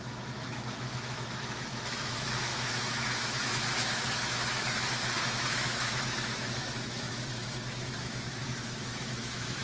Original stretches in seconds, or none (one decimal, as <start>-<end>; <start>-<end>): none